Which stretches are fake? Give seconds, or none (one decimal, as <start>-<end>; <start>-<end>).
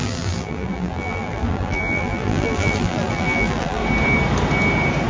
0.0-3.8